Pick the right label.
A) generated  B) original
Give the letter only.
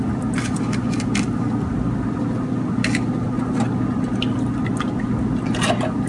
B